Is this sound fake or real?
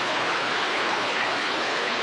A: fake